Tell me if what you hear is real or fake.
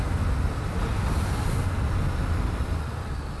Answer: real